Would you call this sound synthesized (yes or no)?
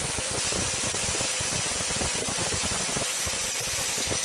yes